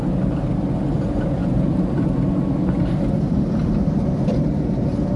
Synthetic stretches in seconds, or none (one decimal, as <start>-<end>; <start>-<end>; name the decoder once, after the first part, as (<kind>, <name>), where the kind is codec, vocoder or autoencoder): none